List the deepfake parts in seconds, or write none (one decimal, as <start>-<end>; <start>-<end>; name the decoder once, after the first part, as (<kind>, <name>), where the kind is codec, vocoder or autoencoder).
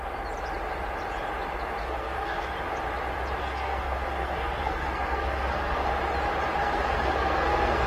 1.8-2.5 (codec, SNAC); 3.4-5.9; 6.6-7.9